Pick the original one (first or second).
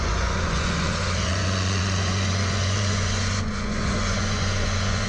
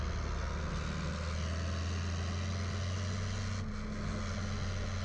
second